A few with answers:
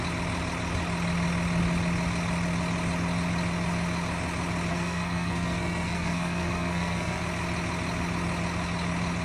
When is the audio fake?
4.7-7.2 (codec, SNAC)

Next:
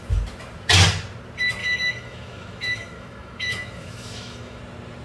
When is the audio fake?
1.6-4.6 (autoencoder, DAC-VAE)

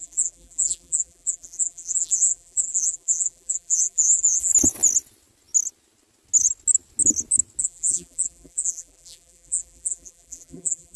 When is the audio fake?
0.0-4.5 (vocoder, BigVGAN v2); 7.6-11.0

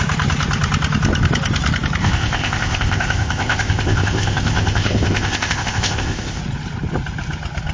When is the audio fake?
2.0-6.4 (codec, ZipCodec)